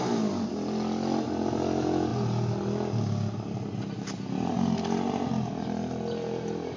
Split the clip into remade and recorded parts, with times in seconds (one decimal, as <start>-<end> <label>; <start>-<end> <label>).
0.0-6.8 recorded